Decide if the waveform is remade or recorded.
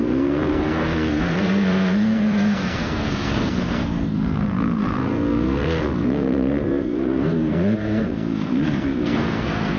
remade